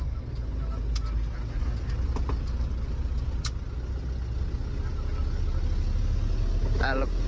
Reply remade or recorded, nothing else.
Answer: recorded